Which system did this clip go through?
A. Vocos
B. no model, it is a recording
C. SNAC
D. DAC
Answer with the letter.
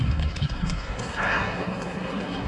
C